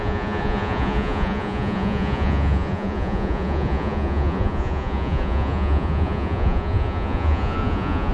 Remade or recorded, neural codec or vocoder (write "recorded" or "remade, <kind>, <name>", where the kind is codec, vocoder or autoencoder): remade, vocoder, Vocos